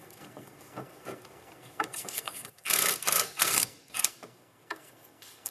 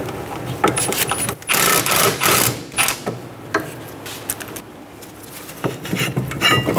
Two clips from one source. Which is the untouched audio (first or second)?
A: second